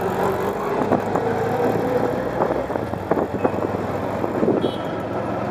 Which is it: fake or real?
real